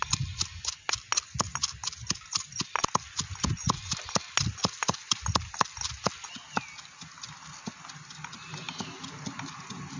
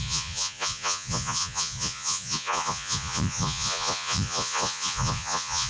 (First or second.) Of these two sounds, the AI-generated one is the second